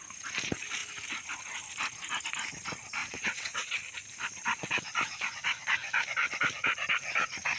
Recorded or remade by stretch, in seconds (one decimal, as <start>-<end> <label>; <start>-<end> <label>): 0.0-3.0 recorded; 3.0-3.7 remade; 3.7-7.6 recorded